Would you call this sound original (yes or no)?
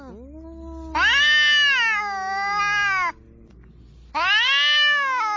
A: yes